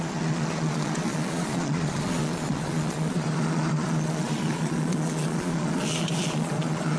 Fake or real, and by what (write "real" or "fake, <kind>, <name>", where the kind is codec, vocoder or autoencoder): fake, vocoder, Vocos